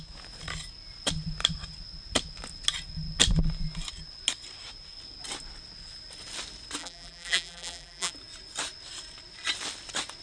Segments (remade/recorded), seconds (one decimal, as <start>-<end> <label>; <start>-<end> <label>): 0.0-6.8 recorded; 6.8-8.1 remade; 8.1-10.2 recorded